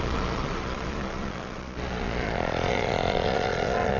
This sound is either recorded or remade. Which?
remade